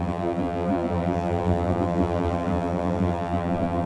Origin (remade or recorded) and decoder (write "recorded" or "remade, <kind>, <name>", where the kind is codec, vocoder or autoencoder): remade, vocoder, BigVGAN v2